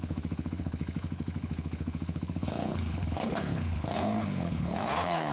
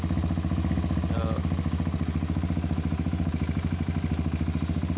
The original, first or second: second